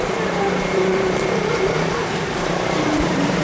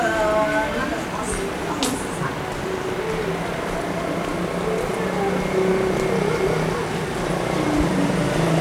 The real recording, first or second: second